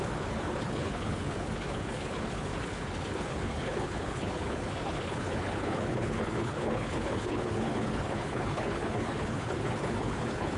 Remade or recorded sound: remade